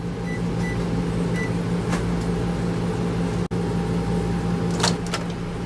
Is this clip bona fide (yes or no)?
yes